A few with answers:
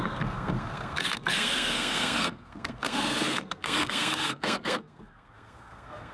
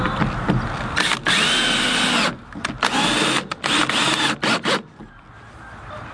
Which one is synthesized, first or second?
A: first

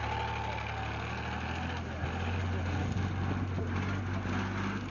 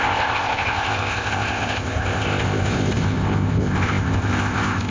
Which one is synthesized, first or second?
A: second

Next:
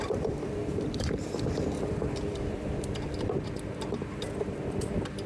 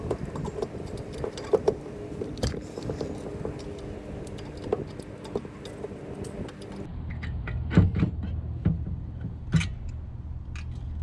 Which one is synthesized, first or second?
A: first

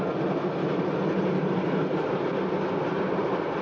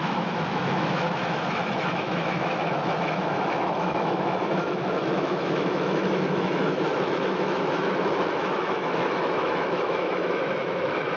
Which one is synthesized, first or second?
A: second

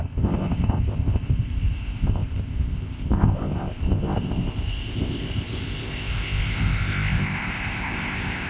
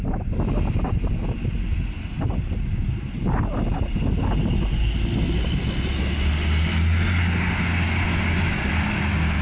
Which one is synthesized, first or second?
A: first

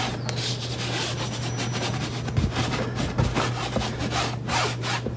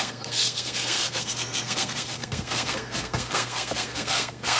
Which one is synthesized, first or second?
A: second